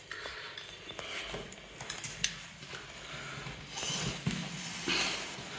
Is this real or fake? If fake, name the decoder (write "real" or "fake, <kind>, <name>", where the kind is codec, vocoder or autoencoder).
real